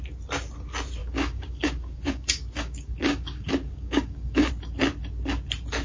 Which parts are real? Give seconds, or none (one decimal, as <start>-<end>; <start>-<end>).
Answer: 0.0-1.0; 4.5-5.8